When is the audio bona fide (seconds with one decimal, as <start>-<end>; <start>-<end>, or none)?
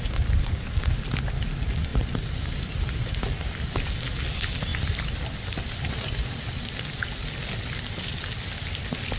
0.0-9.2